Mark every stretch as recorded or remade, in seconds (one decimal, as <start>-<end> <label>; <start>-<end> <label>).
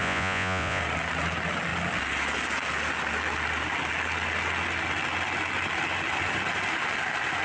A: 0.0-0.8 remade; 0.8-7.4 recorded